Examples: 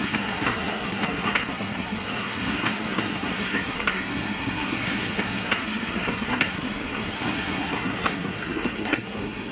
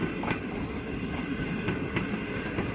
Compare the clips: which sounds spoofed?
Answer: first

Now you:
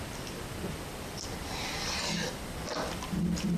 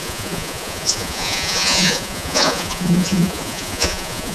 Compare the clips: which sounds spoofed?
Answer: second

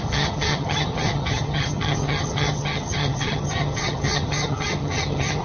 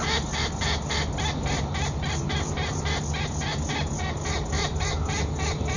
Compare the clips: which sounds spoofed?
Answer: first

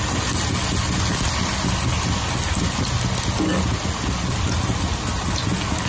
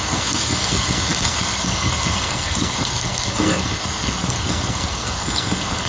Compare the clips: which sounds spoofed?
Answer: second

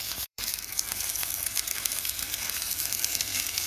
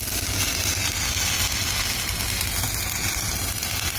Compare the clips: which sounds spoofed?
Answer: first